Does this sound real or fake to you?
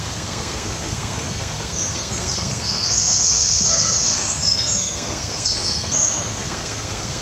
fake